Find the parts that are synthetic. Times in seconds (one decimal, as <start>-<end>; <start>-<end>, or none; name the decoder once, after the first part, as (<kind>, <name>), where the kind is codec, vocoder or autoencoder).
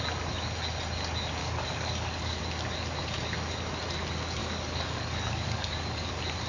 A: 1.4-2.4 (codec, DAC); 4.4-6.1